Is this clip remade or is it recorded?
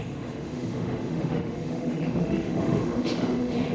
remade